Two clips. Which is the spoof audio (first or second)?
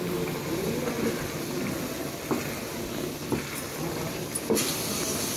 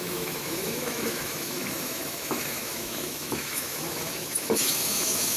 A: second